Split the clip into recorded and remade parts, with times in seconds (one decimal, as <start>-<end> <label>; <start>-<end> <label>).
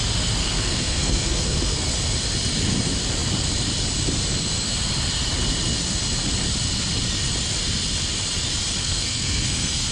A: 0.0-0.4 recorded; 0.4-1.9 remade; 1.9-8.8 recorded; 8.8-9.9 remade